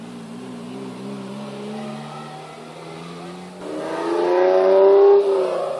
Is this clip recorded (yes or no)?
yes